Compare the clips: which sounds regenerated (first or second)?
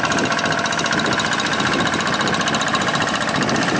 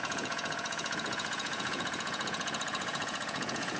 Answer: second